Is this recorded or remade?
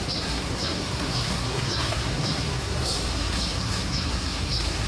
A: remade